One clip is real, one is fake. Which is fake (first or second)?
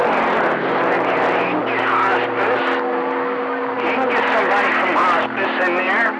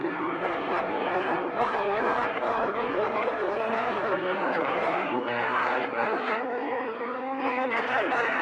second